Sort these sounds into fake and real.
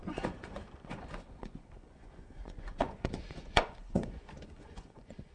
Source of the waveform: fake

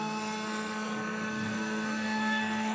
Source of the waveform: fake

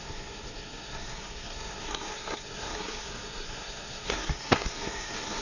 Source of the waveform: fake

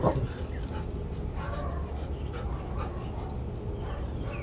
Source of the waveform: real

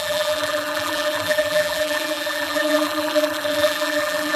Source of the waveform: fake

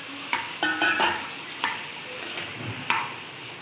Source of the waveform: real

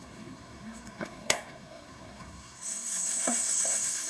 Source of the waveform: fake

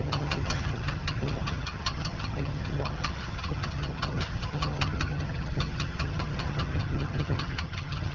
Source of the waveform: fake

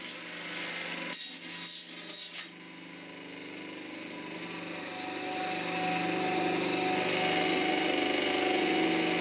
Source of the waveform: real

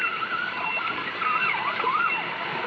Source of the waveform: real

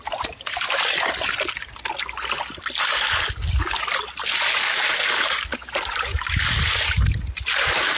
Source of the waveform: real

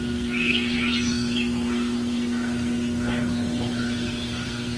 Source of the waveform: fake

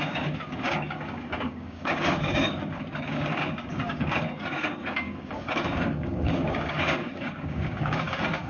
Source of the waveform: fake